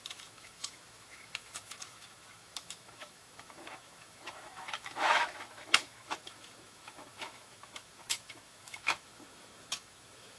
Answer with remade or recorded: remade